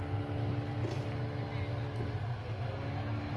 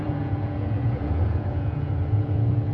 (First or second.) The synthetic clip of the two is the second